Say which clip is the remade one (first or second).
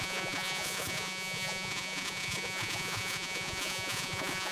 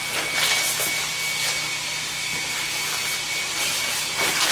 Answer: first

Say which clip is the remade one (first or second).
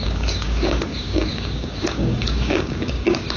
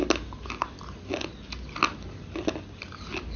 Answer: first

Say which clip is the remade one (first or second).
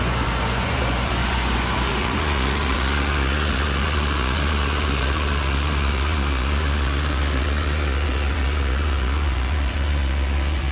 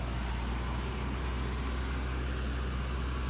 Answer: first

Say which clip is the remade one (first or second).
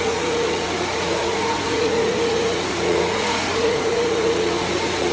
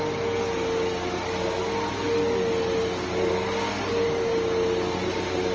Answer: first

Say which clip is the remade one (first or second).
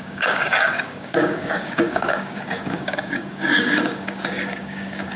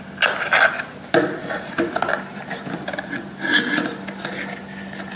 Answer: first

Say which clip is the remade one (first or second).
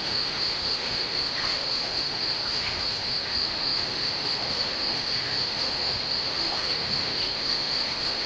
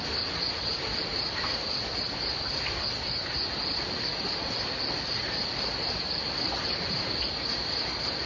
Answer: first